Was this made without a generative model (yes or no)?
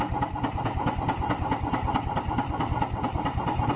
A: yes